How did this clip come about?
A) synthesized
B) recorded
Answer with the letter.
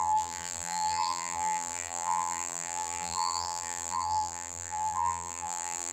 A